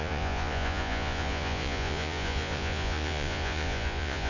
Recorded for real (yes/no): no